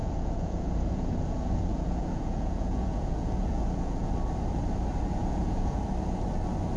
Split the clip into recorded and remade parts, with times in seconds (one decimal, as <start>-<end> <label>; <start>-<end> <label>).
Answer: 0.0-4.1 remade; 4.1-5.2 recorded; 5.2-5.8 remade; 5.8-6.8 recorded